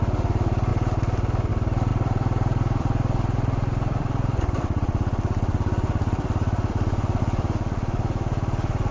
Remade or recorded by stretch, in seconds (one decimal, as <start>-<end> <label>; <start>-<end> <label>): 0.0-1.9 recorded; 1.9-7.2 remade; 7.2-8.9 recorded